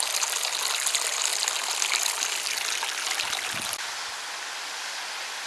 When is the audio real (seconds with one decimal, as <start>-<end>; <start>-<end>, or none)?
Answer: 0.0-5.5